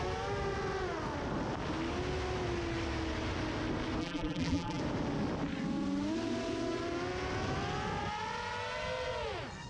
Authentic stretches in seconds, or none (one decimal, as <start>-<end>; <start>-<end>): 0.0-4.0; 4.8-9.7